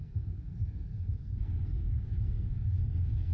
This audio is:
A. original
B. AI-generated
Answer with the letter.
B